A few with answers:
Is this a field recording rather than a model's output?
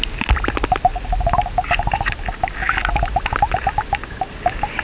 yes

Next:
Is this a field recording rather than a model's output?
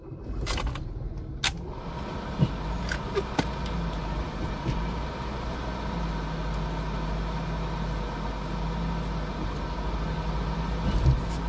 yes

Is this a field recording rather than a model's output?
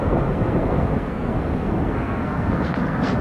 no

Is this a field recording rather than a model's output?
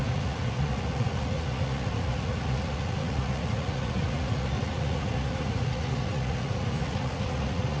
no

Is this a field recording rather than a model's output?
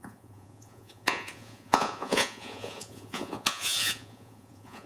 no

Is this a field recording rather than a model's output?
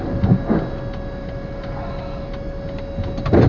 yes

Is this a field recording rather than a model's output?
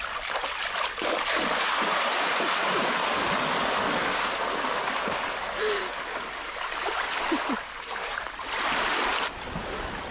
no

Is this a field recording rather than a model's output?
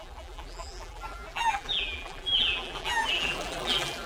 no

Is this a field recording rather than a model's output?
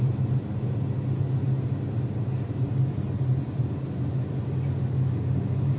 yes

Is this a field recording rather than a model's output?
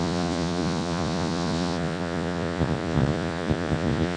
no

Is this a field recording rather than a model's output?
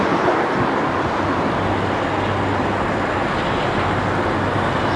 yes